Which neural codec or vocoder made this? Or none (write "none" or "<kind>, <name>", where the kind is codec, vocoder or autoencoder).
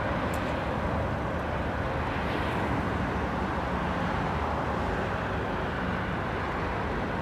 none